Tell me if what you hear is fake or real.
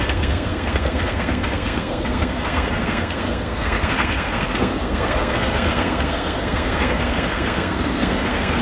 fake